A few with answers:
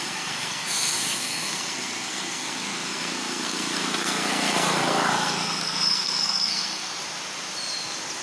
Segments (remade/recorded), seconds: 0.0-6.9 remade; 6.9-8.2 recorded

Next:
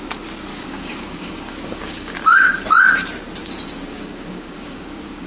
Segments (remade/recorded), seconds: 0.0-0.5 recorded; 0.5-2.6 remade; 2.6-3.4 recorded; 3.4-5.3 remade

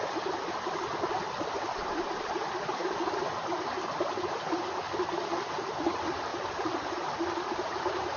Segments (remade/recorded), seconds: 0.0-2.8 remade; 2.8-4.8 recorded; 4.8-6.3 remade; 6.3-6.9 recorded; 6.9-8.2 remade